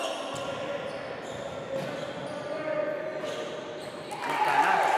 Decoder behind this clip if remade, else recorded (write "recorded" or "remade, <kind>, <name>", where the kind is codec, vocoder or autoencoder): recorded